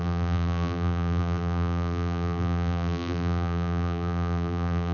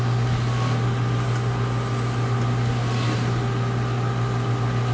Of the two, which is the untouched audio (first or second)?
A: second